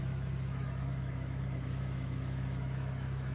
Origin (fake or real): fake